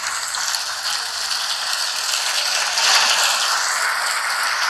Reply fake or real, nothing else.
real